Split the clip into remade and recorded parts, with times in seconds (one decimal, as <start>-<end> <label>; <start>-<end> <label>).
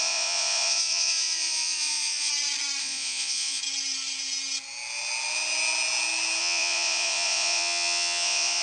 0.0-2.3 remade; 2.3-2.8 recorded; 2.8-3.6 remade; 3.6-6.4 recorded; 6.4-8.6 remade